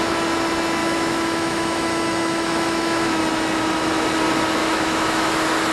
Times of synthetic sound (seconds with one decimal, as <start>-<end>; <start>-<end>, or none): 0.8-3.2; 4.6-5.3